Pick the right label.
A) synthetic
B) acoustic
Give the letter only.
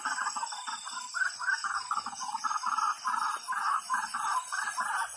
B